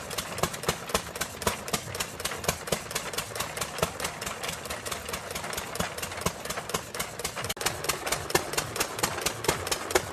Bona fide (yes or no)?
yes